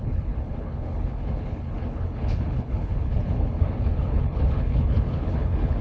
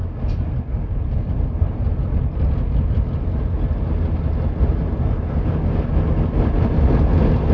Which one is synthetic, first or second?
first